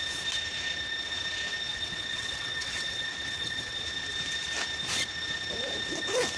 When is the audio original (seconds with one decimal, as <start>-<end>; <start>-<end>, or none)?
0.0-1.7; 3.8-6.4